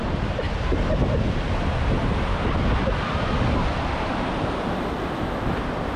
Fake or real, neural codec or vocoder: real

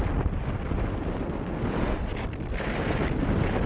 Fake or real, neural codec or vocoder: real